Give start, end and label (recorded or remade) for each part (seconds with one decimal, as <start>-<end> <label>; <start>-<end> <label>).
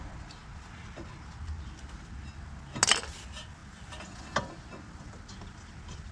0.0-6.1 recorded